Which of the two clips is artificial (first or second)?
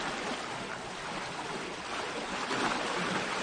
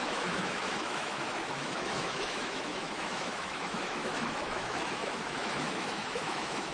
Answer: second